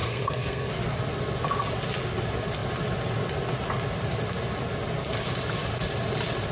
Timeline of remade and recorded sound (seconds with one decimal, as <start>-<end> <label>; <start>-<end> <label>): 0.0-0.7 remade; 0.7-6.5 recorded